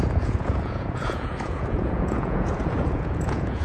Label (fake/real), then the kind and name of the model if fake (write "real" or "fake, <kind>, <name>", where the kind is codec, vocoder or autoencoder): fake, vocoder, Vocos